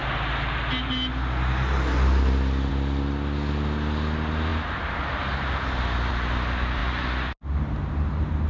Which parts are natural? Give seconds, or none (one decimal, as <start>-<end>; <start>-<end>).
0.0-8.5